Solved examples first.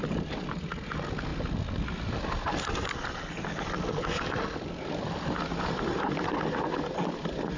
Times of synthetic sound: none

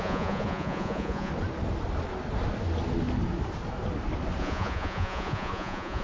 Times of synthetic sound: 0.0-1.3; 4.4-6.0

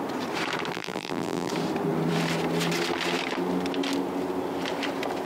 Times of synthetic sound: 0.7-1.5

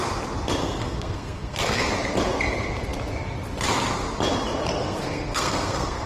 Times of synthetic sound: 0.6-1.9; 4.8-6.1

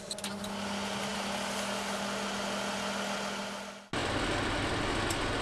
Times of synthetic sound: none